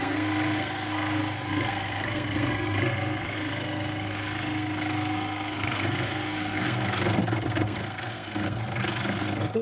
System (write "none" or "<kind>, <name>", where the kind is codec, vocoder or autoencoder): codec, SNAC